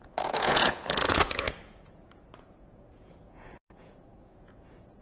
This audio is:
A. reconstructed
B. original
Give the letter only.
A